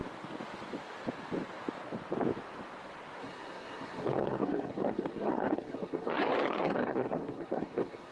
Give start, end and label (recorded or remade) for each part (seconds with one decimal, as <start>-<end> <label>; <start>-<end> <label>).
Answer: 0.0-3.2 recorded; 3.2-8.1 remade